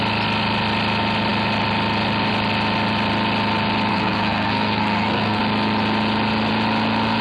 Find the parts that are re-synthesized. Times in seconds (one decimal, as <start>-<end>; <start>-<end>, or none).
3.9-5.4

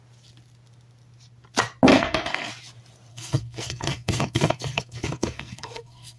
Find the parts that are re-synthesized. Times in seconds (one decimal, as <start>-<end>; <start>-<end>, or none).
1.9-2.5; 3.1-6.2

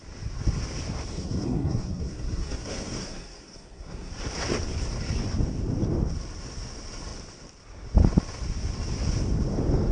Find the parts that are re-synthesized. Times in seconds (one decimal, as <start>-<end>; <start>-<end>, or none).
1.1-4.1

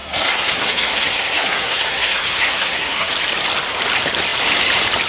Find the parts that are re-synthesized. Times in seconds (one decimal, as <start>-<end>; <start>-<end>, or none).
0.0-3.1

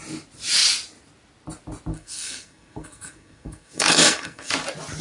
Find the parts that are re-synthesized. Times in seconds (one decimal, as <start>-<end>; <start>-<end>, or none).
1.9-4.5

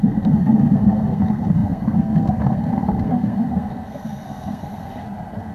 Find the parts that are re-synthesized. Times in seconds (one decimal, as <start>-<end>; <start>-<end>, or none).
0.0-5.5

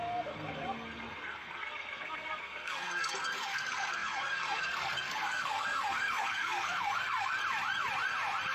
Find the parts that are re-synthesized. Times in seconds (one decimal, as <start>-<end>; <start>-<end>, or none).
0.0-7.4